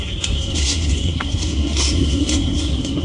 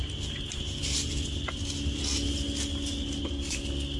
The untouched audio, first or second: second